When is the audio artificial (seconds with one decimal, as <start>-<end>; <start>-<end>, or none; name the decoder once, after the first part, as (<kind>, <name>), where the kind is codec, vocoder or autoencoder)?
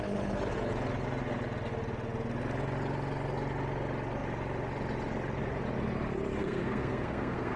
6.4-7.6 (codec, SNAC)